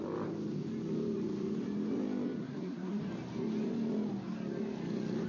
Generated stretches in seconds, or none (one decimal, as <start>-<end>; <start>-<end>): 2.4-3.0